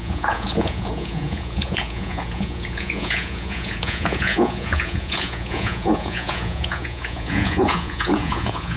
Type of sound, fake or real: fake